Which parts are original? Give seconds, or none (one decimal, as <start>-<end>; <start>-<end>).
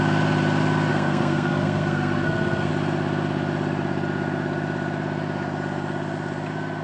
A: 0.0-0.9; 2.7-6.8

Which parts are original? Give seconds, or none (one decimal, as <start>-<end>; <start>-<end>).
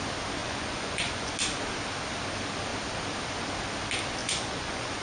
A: 0.0-0.4; 1.3-4.2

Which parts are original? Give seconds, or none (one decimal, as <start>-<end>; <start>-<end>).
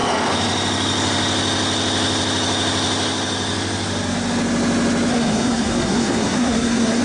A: 0.0-5.1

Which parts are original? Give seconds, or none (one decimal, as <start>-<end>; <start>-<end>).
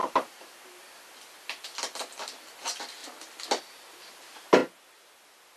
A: 0.7-5.6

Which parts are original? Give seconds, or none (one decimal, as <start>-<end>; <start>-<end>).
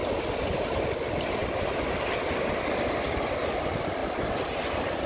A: 0.0-5.1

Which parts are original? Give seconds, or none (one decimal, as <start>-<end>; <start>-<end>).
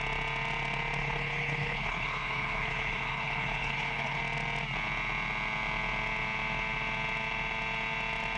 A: 0.0-1.0; 4.2-8.4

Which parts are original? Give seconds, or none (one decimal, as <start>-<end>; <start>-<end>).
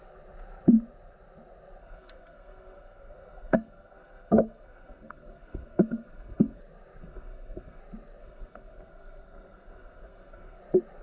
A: 0.0-1.8; 6.6-7.0; 7.8-8.2; 10.6-11.0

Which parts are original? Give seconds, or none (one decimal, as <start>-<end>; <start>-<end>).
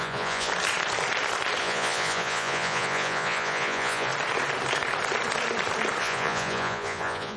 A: 0.5-1.6; 4.1-6.0